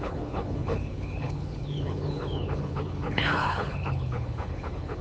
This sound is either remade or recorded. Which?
remade